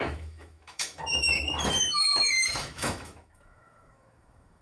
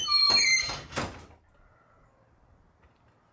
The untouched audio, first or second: second